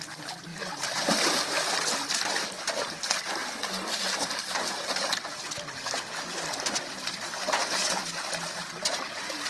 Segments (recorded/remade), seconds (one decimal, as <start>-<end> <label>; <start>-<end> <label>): 0.0-9.5 recorded